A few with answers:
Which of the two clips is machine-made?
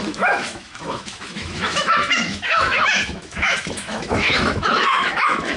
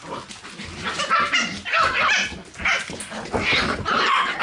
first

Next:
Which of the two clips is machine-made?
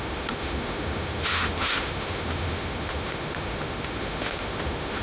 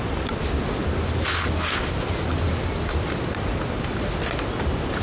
first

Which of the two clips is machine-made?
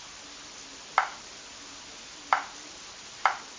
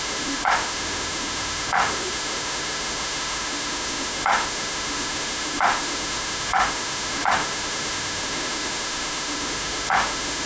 second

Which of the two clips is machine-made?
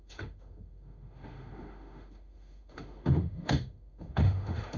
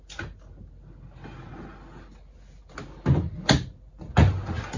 first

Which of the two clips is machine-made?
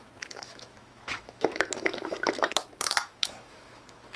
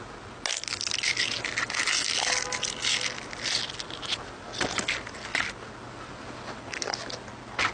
first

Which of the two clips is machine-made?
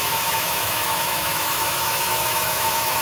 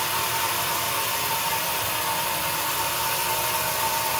first